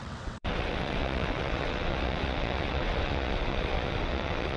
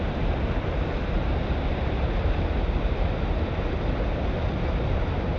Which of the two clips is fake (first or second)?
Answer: first